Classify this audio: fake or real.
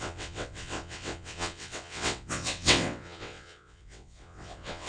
fake